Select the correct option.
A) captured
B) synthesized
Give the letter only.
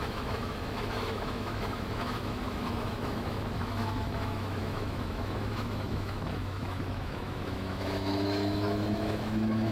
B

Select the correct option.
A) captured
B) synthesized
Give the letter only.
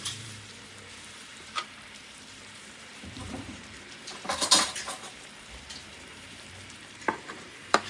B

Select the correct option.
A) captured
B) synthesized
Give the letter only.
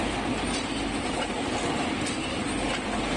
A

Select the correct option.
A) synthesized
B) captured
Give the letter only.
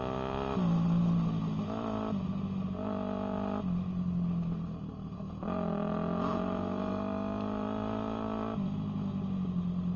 B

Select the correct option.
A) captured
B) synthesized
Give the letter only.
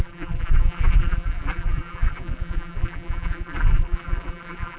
B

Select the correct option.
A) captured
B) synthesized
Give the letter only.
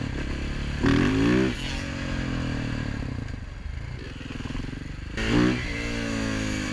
A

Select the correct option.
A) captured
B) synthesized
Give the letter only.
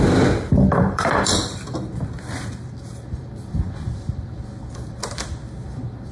B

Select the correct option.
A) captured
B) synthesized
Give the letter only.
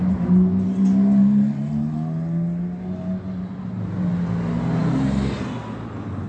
A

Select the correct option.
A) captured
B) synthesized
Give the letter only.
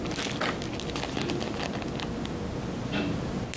A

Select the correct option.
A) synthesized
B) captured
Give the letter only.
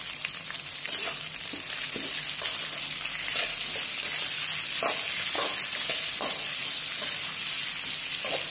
B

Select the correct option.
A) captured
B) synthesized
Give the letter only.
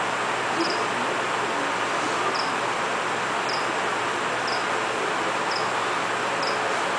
A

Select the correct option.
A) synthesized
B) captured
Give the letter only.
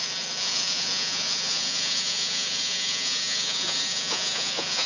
A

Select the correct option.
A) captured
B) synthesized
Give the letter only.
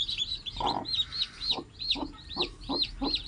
B